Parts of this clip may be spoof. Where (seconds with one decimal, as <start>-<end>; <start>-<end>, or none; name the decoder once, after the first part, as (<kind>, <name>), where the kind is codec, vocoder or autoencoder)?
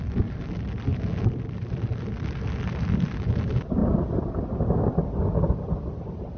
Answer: none